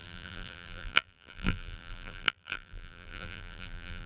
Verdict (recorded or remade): remade